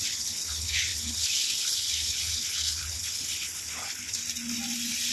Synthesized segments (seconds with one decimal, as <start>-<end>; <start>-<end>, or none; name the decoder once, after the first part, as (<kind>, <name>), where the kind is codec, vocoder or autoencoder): 0.0-4.2 (codec, HILCodec)